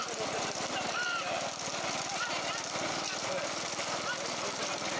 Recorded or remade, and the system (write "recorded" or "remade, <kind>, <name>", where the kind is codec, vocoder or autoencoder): recorded